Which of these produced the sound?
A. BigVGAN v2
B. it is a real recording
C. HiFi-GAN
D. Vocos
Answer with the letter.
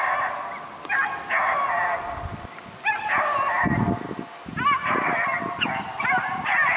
B